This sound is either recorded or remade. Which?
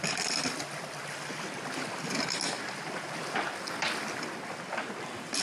recorded